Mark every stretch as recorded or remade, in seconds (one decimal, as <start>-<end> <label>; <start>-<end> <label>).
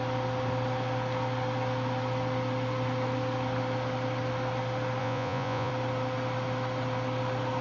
0.0-5.0 recorded; 5.0-5.7 remade; 5.7-7.6 recorded